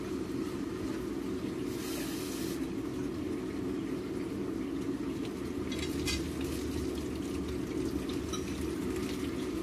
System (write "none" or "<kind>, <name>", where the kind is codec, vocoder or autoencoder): none